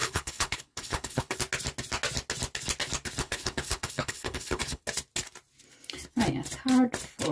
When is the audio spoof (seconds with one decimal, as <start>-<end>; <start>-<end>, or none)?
0.0-1.4; 3.2-4.8